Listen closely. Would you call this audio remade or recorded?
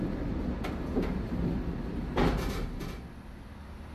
recorded